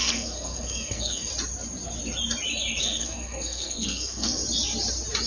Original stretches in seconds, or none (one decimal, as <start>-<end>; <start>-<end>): 1.3-2.8; 4.4-5.3